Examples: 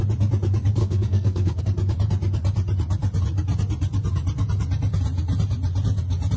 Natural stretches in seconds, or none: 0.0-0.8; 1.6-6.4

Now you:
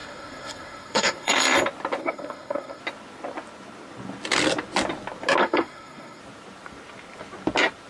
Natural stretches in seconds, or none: 1.4-2.0; 2.8-5.4; 6.2-7.9

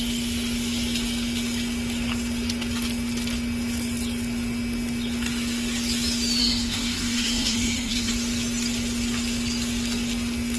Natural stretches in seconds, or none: 0.0-6.4; 8.1-10.6

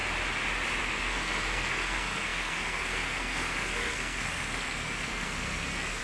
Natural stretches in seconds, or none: 0.0-0.8

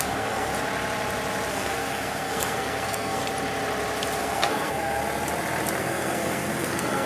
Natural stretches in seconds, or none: 0.5-1.5; 3.2-4.2; 5.0-5.8

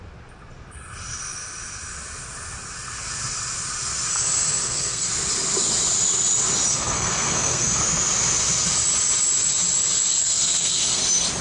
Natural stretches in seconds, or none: 0.0-4.1; 5.1-6.7; 7.8-10.2; 11.0-11.4

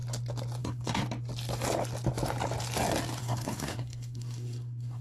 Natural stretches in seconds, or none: 0.0-0.6; 1.0-3.2

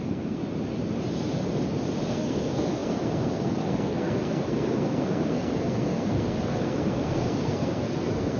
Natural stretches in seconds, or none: 0.4-2.1